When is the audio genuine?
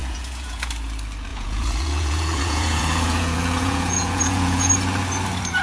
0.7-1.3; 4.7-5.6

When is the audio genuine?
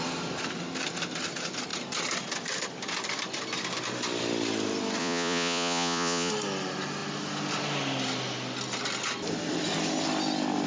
0.0-5.0; 6.3-10.7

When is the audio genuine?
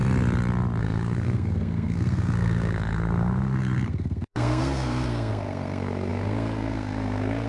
0.0-0.8